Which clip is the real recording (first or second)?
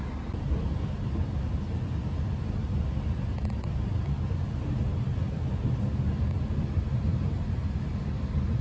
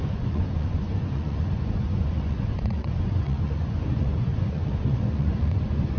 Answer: first